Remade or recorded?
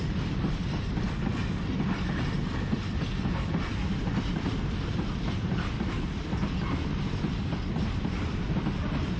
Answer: remade